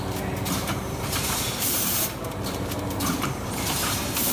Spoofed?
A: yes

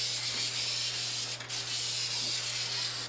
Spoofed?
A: no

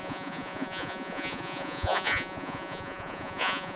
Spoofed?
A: yes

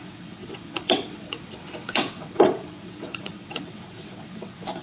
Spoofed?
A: yes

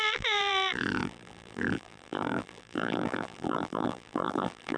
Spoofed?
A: yes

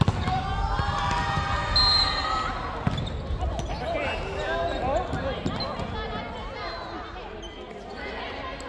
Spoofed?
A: no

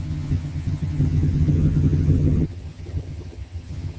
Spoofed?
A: yes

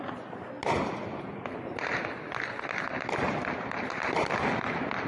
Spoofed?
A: no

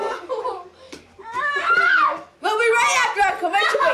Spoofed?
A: no